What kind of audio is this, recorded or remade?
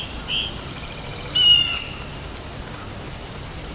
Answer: recorded